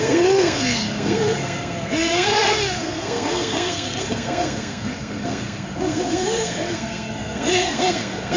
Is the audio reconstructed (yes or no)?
yes